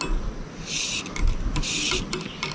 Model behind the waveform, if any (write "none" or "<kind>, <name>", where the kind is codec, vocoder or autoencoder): none